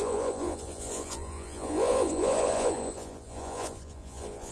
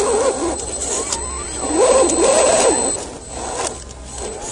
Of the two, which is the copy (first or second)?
first